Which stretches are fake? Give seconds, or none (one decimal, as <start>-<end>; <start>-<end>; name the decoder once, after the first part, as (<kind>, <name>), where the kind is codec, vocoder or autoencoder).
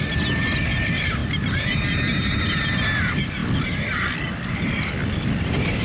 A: none